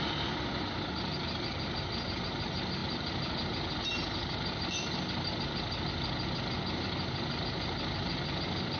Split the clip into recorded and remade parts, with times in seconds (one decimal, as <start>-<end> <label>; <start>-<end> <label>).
0.0-8.8 recorded